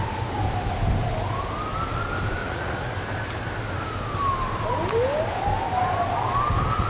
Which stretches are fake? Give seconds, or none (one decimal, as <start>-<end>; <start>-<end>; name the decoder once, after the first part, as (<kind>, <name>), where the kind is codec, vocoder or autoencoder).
2.4-2.9 (vocoder, Vocos)